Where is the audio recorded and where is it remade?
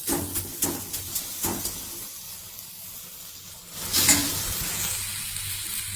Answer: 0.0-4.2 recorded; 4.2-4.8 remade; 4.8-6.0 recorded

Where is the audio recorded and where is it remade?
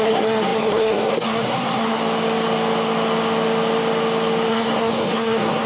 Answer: 0.0-2.0 remade; 2.0-4.5 recorded; 4.5-5.7 remade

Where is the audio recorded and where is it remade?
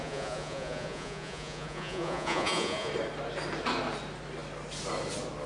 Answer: 0.0-2.9 remade; 2.9-5.5 recorded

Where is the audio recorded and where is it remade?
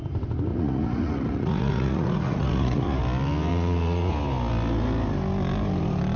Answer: 0.0-0.5 recorded; 0.5-3.0 remade; 3.0-3.5 recorded; 3.5-4.1 remade; 4.1-6.2 recorded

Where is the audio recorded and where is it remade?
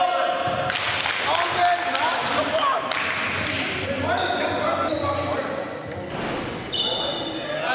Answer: 0.0-7.7 recorded